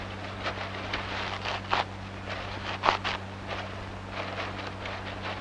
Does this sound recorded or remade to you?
recorded